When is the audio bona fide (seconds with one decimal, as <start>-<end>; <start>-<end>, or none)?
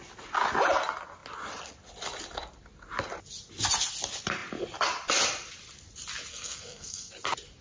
0.0-6.3; 7.1-7.6